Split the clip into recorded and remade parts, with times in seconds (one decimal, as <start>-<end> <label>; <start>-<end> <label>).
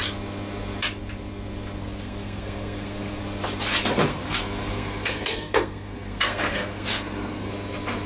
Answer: 0.0-1.8 recorded; 1.8-3.2 remade; 3.2-4.1 recorded; 4.1-7.5 remade; 7.5-8.1 recorded